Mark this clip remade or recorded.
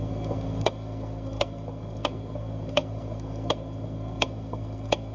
remade